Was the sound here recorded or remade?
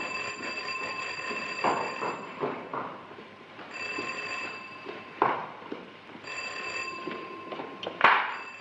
remade